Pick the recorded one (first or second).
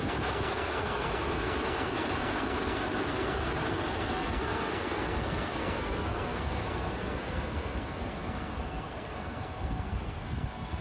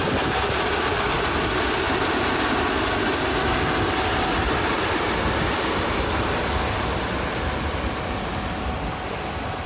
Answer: second